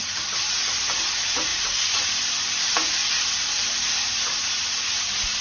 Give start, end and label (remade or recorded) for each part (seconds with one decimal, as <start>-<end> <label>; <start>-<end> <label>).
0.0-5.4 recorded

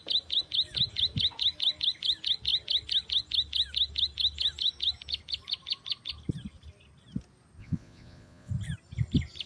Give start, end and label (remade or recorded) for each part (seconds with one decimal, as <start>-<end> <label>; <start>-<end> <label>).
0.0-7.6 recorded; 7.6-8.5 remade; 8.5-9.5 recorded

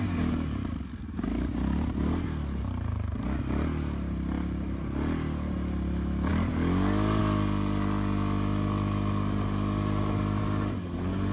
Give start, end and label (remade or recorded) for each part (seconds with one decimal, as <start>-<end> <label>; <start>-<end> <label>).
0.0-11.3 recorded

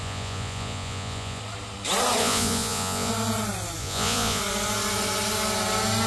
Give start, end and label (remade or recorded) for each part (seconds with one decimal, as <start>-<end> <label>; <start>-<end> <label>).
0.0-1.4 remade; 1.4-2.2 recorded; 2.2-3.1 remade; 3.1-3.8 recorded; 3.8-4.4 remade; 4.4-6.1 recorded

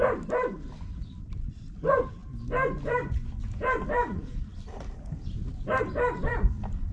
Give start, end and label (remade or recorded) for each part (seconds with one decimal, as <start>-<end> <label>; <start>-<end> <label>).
0.0-2.2 remade; 2.2-2.8 recorded; 2.8-6.9 remade